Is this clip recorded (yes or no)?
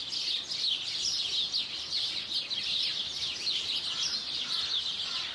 yes